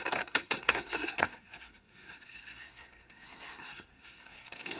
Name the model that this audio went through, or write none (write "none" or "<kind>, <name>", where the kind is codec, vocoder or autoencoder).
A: codec, SNAC